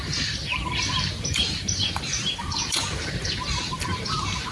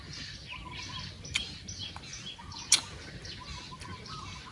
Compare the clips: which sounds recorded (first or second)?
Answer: second